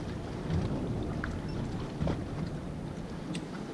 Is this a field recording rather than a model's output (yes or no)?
yes